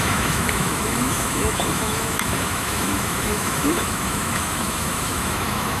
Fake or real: fake